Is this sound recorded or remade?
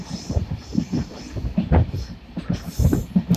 remade